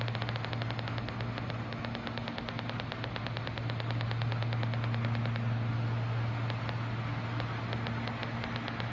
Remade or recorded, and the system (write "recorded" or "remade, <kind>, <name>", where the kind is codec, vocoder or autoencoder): recorded